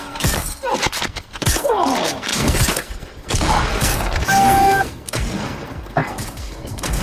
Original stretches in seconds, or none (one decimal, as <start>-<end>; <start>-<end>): none